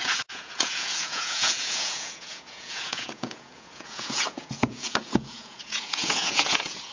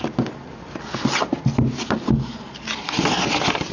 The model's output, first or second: first